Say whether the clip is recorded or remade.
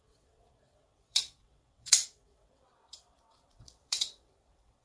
remade